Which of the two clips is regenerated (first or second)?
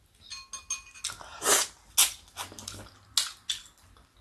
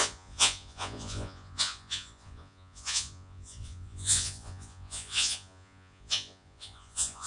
second